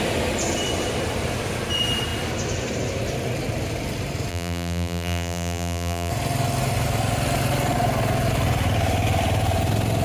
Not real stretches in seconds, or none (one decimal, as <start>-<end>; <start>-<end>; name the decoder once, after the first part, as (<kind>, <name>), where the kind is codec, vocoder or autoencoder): 4.3-6.1 (vocoder, BigVGAN v2)